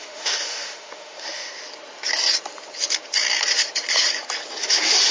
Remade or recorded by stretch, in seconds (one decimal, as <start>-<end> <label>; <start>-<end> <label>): 0.0-1.5 remade; 1.5-4.6 recorded; 4.6-5.1 remade